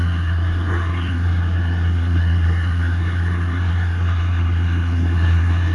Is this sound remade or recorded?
remade